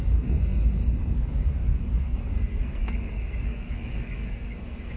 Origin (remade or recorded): remade